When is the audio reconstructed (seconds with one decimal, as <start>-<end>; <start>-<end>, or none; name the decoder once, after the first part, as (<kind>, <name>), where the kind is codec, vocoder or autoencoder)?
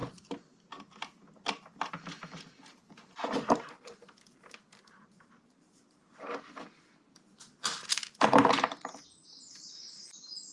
1.9-6.1 (vocoder, BigVGAN v2); 7.9-10.5